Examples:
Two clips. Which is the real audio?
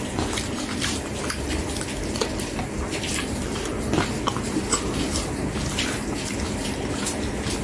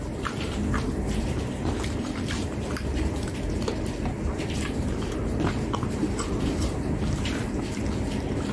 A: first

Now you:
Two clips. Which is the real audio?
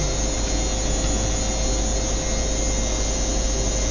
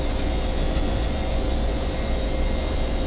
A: first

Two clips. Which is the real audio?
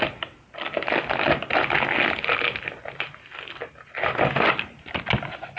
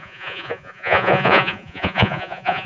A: first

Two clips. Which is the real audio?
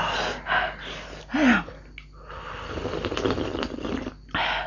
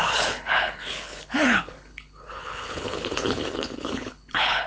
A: first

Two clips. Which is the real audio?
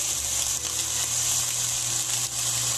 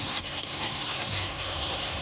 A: first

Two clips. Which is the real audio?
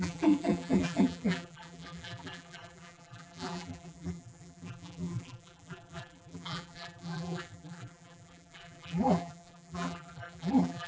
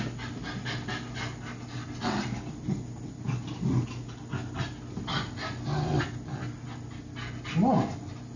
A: second